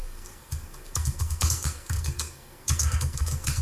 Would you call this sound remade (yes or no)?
yes